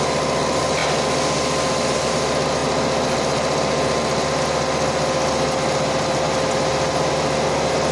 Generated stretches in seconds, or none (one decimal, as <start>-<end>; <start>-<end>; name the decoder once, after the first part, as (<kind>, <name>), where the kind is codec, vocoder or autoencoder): none